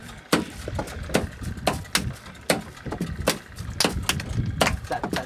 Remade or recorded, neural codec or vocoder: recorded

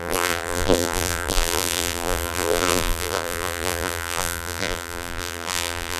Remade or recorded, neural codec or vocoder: remade, vocoder, BigVGAN v2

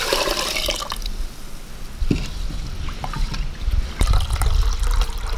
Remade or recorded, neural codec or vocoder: recorded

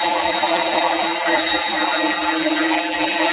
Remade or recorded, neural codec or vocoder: remade, vocoder, BigVGAN v2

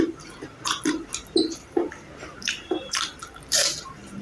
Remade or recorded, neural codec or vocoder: remade, vocoder, BigVGAN v2